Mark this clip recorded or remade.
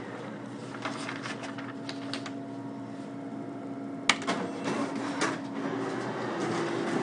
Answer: recorded